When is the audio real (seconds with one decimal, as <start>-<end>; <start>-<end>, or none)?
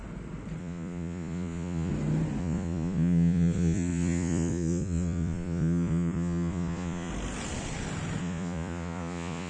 0.0-0.6; 1.9-2.4; 7.1-8.2